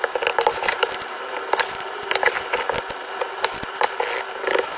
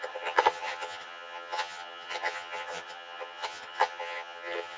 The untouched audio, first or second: first